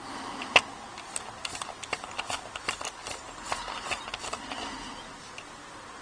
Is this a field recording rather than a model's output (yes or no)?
yes